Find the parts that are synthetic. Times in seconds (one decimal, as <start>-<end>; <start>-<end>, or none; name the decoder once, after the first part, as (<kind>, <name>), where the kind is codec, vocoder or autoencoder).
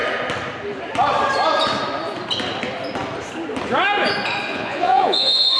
4.5-5.6 (vocoder, Vocos)